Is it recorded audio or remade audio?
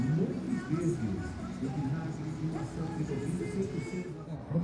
recorded